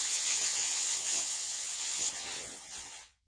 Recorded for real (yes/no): no